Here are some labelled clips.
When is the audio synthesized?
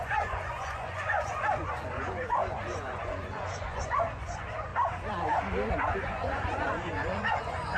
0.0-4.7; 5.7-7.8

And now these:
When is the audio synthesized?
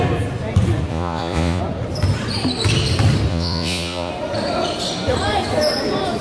0.9-1.6; 3.3-4.1